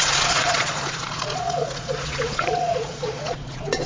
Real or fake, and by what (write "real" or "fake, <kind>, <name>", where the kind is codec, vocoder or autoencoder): fake, vocoder, Vocos